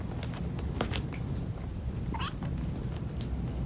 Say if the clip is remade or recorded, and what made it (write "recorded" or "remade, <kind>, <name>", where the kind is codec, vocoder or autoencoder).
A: recorded